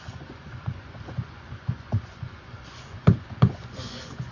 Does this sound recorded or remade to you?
remade